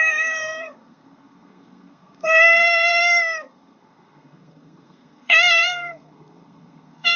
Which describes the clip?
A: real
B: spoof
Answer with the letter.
B